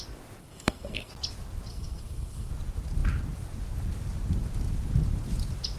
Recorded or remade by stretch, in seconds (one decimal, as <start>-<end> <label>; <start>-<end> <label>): 0.0-0.4 recorded; 0.4-1.1 remade; 1.1-1.7 recorded; 1.7-2.5 remade; 2.5-5.8 recorded